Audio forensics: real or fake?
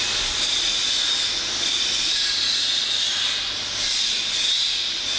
real